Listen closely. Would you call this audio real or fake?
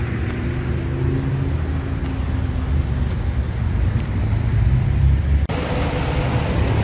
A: real